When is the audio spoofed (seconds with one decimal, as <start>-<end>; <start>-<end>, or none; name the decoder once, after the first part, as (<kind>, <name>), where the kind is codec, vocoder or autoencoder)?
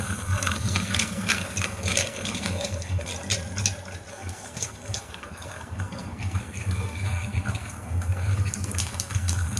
0.0-3.1 (codec, SNAC); 4.1-9.6